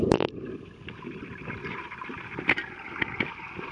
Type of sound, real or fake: fake